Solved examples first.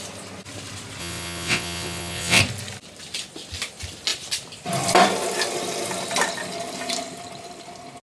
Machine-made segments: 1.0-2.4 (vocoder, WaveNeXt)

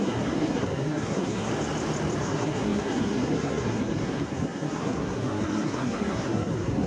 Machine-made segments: 0.0-1.5 (codec, SNAC); 2.2-6.9

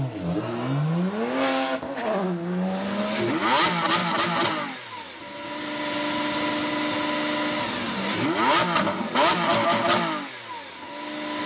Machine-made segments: 4.0-5.2 (vocoder, BigVGAN v2)

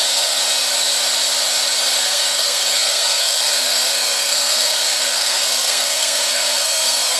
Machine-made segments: 0.0-0.4 (codec, SNAC); 2.0-7.2